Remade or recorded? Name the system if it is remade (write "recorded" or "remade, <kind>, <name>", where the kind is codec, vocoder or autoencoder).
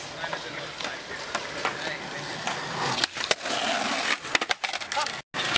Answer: recorded